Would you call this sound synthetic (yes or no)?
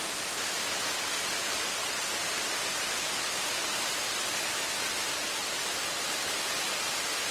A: no